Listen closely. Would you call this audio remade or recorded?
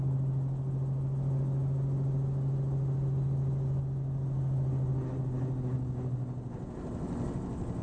recorded